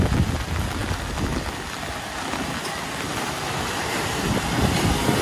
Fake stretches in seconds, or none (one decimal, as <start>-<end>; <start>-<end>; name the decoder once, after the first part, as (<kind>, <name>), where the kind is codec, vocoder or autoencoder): none